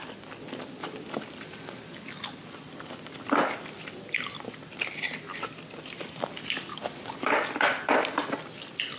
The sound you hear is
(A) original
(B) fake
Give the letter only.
A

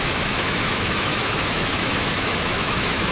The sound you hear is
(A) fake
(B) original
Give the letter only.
A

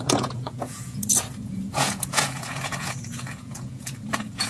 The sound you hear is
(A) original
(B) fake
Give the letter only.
B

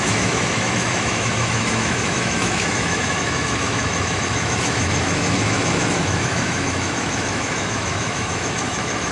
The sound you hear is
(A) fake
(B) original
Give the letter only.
A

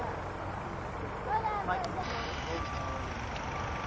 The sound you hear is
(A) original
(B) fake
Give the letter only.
A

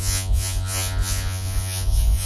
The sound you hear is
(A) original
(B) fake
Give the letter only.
B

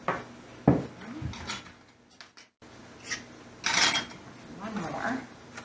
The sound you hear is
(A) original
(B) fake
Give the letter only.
A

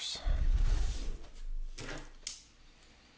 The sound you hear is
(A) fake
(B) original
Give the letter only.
B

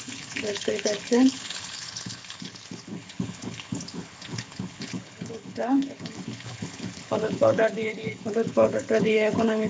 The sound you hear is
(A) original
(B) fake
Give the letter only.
B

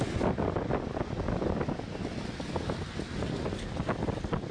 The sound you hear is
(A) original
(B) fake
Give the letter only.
A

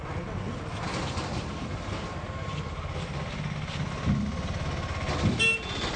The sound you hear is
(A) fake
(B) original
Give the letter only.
B